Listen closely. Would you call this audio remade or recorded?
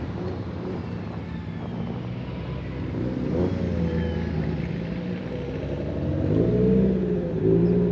recorded